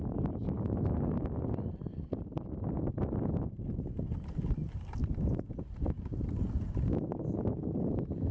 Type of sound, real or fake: real